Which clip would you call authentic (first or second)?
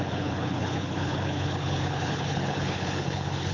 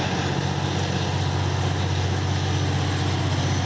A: second